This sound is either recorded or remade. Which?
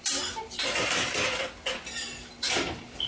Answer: recorded